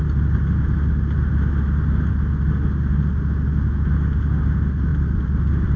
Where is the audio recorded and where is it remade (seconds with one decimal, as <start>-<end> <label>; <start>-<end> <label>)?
0.0-4.9 recorded; 4.9-5.8 remade